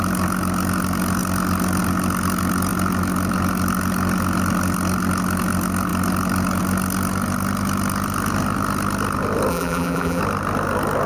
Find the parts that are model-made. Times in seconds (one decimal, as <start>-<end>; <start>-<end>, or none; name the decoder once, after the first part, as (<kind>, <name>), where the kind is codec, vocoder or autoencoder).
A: 9.5-10.2 (vocoder, BigVGAN v2)

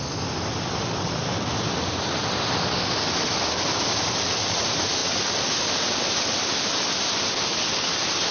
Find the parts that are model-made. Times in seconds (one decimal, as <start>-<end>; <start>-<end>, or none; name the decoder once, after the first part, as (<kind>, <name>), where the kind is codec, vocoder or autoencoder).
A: 0.0-8.3 (vocoder, BigVGAN v2)

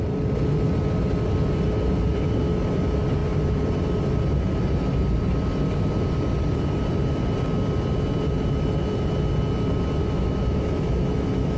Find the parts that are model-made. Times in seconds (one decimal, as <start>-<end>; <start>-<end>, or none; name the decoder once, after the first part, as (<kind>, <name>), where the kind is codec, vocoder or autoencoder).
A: 10.0-11.6 (autoencoder, DAC-VAE)

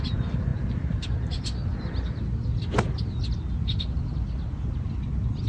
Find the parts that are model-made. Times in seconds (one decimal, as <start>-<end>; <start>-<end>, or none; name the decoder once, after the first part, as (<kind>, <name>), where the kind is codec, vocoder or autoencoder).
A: none

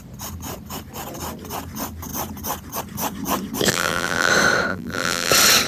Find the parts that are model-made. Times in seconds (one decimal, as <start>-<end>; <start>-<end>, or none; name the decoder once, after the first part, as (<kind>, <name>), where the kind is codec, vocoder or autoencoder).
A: 3.7-4.3 (vocoder, BigVGAN v2); 4.7-5.3